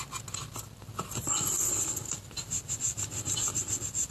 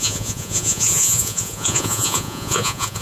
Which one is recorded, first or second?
first